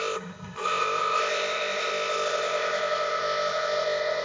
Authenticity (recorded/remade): remade